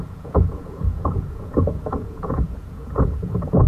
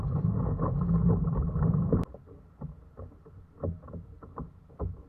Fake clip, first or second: first